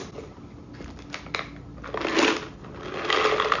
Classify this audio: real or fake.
real